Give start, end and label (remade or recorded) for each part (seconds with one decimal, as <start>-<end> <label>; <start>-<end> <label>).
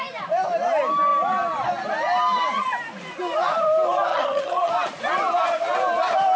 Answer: 0.0-4.1 recorded; 4.1-4.7 remade; 4.7-6.4 recorded